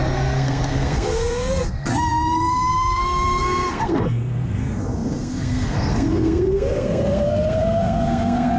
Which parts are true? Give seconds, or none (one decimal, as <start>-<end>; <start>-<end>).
none